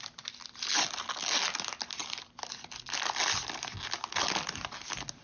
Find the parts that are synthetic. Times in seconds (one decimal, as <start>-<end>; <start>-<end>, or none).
none